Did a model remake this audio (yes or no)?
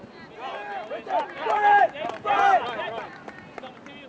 no